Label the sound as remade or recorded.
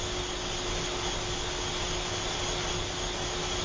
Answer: recorded